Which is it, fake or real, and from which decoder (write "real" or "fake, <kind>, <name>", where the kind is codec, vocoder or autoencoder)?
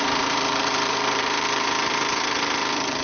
fake, vocoder, BigVGAN v2